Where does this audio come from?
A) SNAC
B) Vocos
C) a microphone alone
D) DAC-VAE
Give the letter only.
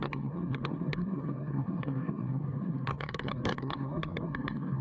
A